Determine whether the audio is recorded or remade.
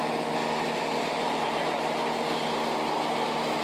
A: recorded